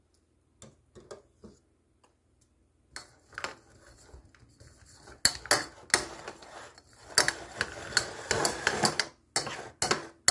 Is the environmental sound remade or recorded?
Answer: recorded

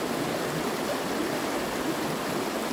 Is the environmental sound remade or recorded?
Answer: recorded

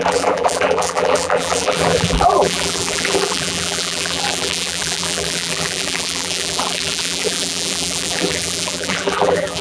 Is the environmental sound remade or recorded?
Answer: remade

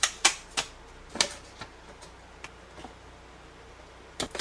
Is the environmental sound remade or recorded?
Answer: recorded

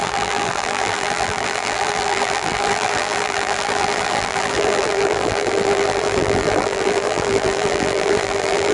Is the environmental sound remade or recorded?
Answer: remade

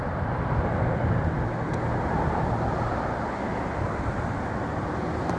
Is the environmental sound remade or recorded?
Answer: recorded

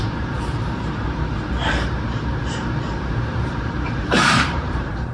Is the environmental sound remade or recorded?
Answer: remade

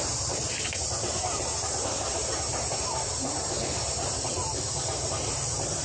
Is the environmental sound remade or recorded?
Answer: remade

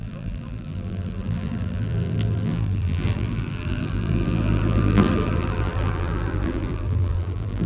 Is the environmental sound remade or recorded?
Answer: remade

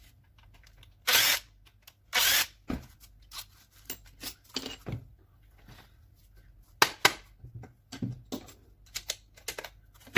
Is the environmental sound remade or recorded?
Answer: recorded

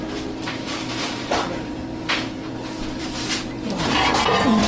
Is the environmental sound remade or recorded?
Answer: remade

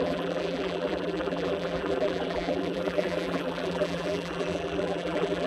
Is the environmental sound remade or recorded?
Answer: remade